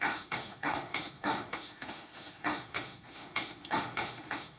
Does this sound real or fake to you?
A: fake